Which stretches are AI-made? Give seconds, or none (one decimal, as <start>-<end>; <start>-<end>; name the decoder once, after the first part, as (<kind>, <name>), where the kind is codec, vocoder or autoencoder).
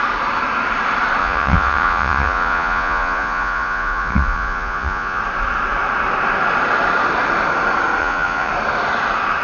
1.2-5.2 (vocoder, Vocos); 8.0-8.5